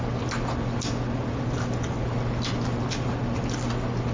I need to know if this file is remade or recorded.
recorded